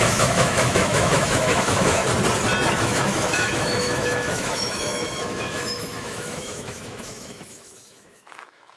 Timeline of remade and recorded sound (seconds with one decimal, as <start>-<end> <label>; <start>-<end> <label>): 0.0-2.0 remade; 2.0-2.7 recorded; 2.7-8.8 remade